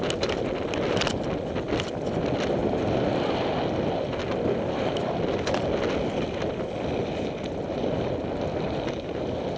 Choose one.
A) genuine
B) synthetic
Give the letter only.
A